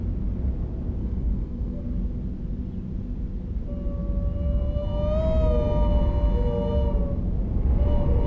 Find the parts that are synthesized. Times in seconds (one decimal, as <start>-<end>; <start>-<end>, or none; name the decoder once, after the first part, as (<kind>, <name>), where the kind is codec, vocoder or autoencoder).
1.0-1.8 (codec, SNAC)